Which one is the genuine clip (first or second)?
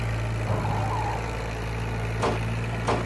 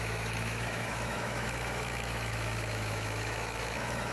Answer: first